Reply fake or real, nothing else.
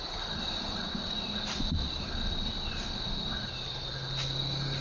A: real